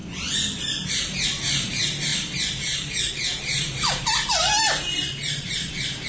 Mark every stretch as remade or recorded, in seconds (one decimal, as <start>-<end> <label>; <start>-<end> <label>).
0.0-0.9 recorded; 0.9-2.1 remade; 2.1-3.1 recorded; 3.1-6.1 remade